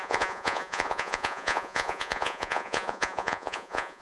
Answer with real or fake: fake